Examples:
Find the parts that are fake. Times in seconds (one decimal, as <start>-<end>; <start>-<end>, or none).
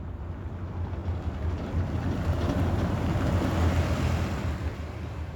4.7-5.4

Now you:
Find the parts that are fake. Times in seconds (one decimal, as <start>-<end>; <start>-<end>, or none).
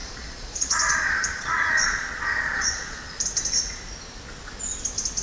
0.0-3.0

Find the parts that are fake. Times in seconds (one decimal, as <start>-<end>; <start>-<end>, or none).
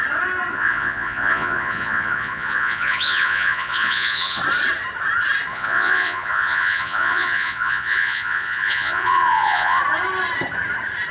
0.5-4.4; 5.5-9.8